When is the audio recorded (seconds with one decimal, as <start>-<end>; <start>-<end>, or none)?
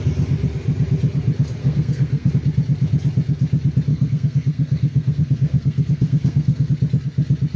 0.0-1.6; 2.3-3.9; 6.7-7.6